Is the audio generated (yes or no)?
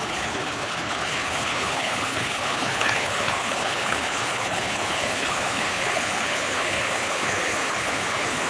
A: yes